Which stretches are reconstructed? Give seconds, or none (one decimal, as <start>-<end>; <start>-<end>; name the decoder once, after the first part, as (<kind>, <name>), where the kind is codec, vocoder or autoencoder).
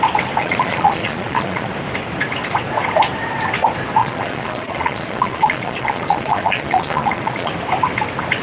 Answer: 0.4-1.7 (vocoder, Vocos); 4.0-7.5